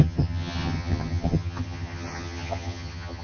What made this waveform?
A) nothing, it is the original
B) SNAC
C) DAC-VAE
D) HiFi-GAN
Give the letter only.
D